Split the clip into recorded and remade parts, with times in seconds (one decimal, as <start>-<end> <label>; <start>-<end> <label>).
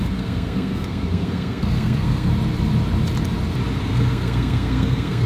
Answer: 0.0-2.3 remade; 2.3-3.8 recorded; 3.8-5.3 remade